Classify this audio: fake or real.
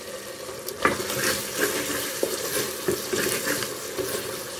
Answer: real